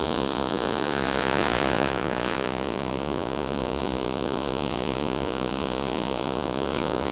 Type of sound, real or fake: fake